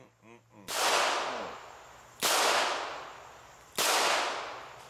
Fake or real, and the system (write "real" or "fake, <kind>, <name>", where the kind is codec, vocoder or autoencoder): real